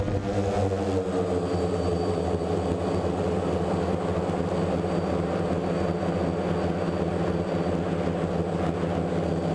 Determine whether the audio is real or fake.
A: real